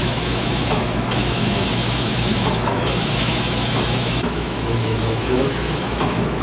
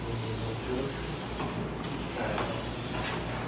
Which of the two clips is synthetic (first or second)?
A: first